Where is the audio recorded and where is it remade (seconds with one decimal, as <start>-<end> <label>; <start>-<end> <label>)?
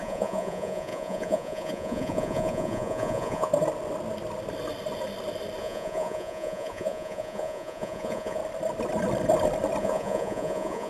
0.0-3.5 remade; 3.5-5.6 recorded; 5.6-8.4 remade; 8.4-9.8 recorded; 9.8-10.9 remade